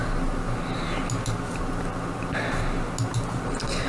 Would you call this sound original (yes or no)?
yes